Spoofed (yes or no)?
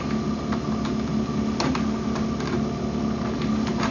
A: no